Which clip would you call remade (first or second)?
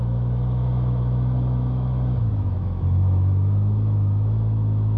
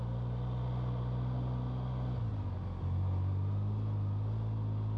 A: first